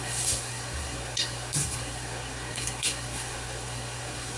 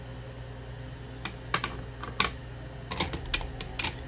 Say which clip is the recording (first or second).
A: second